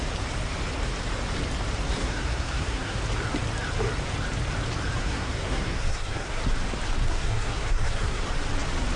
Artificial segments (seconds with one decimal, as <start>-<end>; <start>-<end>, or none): 2.0-3.0; 5.0-6.4; 7.0-8.2